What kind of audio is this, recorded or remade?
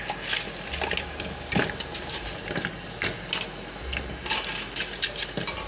recorded